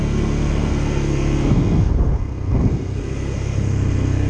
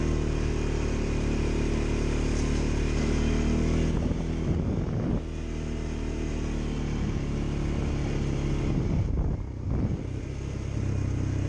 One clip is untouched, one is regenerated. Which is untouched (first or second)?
second